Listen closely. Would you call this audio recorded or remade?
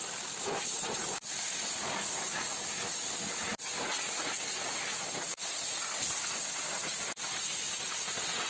recorded